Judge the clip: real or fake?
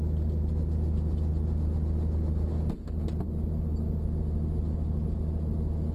real